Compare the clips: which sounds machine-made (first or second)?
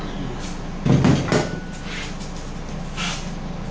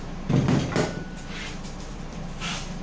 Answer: second